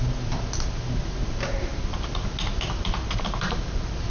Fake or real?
fake